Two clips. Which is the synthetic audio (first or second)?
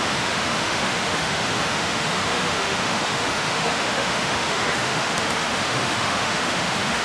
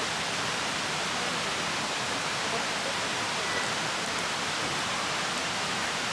first